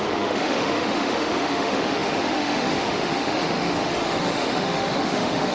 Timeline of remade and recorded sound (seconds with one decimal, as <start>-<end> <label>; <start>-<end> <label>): 0.0-5.5 remade